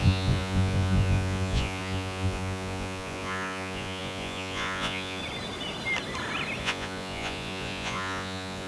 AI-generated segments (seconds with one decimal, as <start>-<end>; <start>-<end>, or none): 0.0-5.2; 6.6-8.7